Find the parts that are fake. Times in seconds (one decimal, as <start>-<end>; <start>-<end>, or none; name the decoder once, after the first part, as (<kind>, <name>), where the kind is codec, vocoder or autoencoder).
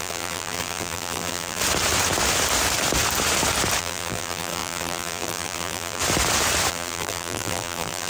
0.0-1.6 (vocoder, BigVGAN v2); 3.8-6.0; 6.7-8.1